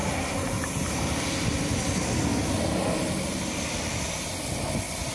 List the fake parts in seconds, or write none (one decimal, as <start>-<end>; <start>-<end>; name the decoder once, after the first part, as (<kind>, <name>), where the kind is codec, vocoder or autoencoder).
0.0-1.1 (vocoder, BigVGAN v2)